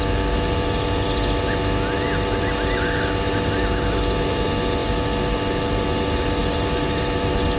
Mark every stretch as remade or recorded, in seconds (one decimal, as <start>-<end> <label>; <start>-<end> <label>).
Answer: 0.0-7.6 recorded